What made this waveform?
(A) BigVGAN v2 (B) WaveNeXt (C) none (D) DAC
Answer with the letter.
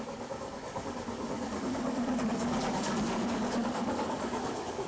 D